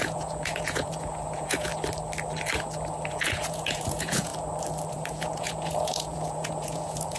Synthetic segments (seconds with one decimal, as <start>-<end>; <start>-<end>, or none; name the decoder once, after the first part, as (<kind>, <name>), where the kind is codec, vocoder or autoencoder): 0.0-1.7 (vocoder, Vocos); 3.1-4.3; 4.9-7.2